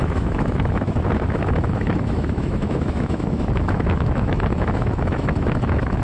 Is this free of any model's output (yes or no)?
no